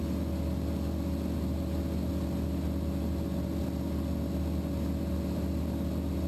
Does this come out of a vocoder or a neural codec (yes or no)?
no